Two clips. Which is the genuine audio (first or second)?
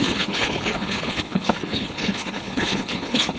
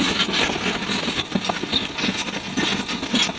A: second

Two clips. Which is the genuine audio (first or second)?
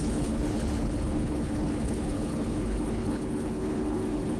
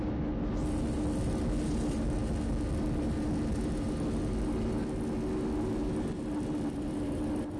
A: second